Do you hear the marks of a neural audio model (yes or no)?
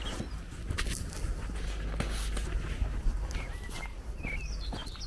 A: no